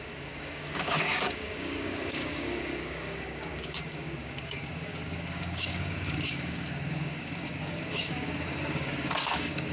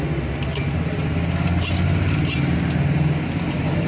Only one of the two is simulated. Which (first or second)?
first